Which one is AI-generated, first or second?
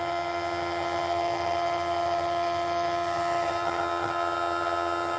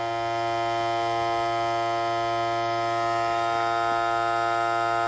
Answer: first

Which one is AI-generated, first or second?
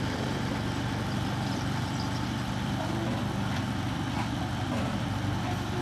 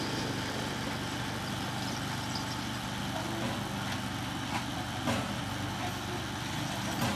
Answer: first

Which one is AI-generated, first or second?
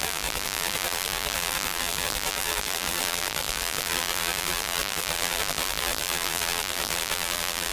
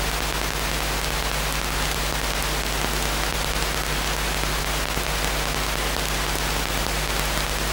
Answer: first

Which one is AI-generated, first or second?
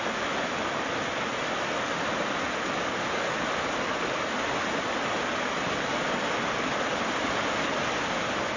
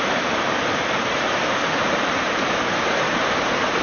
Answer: second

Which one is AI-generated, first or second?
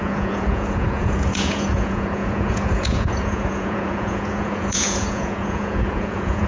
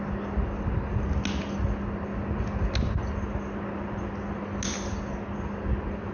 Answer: first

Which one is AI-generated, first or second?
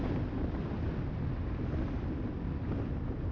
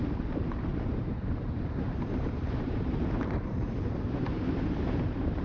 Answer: second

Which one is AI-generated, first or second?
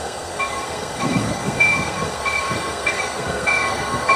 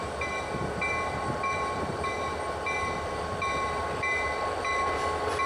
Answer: first